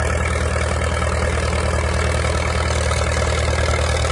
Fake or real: real